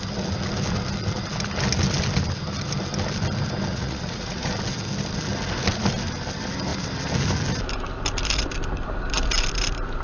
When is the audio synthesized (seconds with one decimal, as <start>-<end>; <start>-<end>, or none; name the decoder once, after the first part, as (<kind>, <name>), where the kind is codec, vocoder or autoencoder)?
3.7-4.5 (vocoder, Vocos)